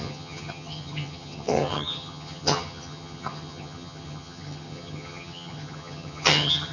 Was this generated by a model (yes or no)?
yes